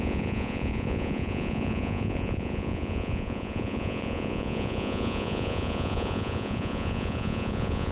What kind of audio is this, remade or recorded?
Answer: remade